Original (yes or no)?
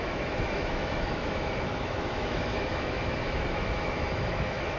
no